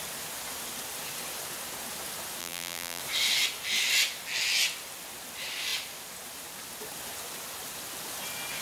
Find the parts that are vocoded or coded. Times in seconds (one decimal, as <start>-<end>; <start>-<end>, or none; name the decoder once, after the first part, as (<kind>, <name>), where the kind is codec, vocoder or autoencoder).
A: 2.4-3.0 (vocoder, BigVGAN v2)